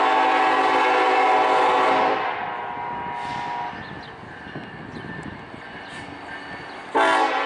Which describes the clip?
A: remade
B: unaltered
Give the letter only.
B